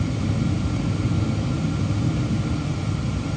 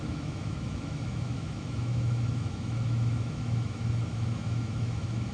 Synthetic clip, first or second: second